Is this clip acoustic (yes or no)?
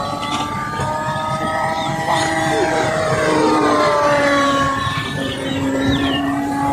no